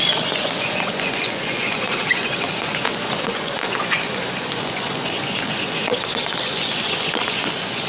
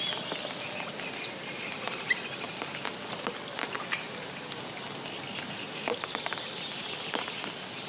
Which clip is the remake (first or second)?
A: first